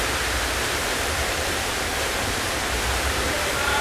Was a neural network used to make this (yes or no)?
yes